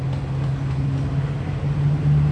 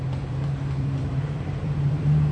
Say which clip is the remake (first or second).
second